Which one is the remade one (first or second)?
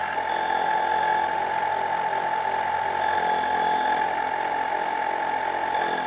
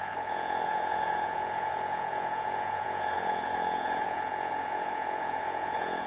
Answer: second